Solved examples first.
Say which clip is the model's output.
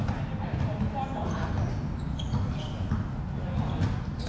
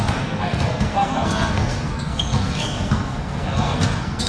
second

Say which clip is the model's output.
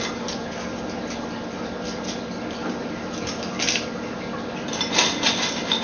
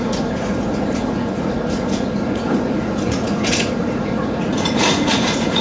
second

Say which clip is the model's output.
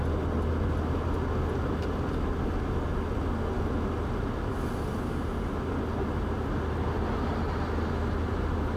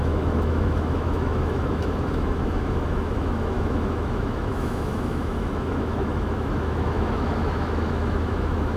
second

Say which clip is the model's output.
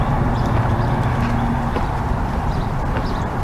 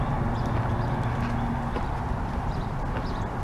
first